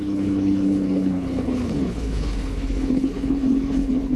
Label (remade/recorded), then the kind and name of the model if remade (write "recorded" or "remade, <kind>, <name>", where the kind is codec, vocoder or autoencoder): remade, codec, HILCodec